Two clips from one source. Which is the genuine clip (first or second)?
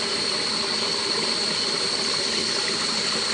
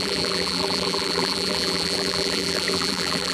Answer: first